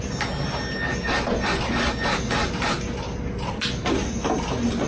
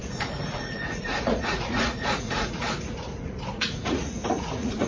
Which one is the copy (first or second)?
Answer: second